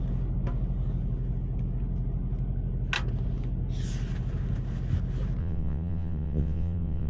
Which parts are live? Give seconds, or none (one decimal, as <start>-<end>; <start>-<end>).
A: 0.0-5.4

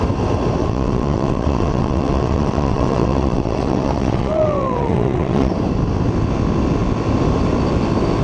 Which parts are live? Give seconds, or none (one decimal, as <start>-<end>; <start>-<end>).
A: 0.0-0.6; 5.5-8.2

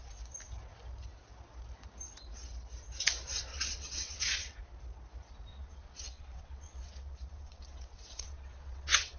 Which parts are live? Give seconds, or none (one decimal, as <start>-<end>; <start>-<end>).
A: 0.0-3.5; 4.6-5.5

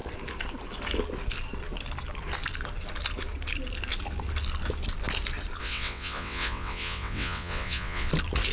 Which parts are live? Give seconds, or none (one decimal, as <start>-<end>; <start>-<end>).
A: 0.0-5.6; 8.1-8.5

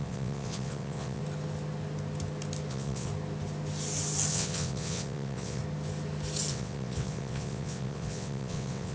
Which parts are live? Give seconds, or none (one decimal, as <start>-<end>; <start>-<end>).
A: 1.2-2.7; 3.1-4.3; 5.6-6.5